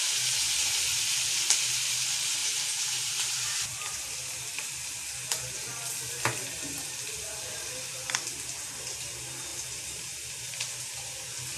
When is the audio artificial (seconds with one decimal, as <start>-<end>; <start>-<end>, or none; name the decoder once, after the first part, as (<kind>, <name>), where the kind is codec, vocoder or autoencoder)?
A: 2.4-4.1 (vocoder, BigVGAN v2)